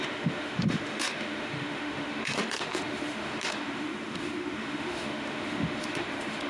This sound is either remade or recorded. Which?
remade